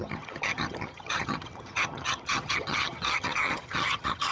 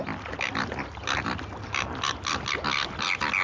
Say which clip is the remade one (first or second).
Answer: first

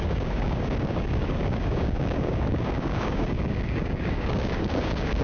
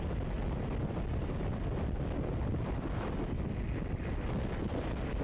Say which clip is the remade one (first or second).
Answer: first